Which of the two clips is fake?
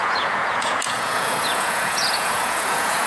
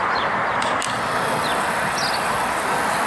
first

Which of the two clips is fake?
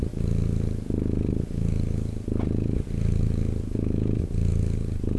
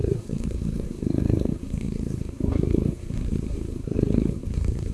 second